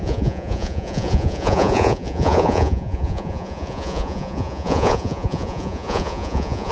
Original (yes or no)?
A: no